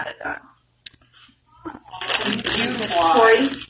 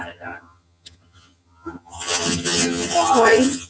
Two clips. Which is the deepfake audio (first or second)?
second